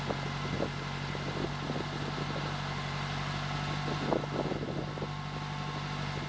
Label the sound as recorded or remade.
recorded